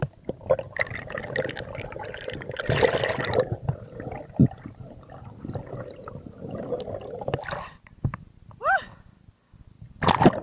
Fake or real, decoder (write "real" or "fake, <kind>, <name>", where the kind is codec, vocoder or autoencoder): real